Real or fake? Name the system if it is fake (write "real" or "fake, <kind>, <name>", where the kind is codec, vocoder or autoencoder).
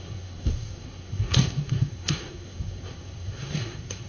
fake, codec, SNAC